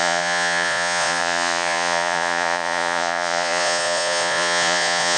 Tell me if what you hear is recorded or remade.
remade